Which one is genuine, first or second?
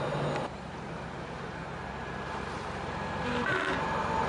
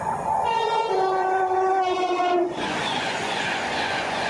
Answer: first